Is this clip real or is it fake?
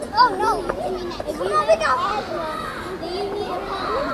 real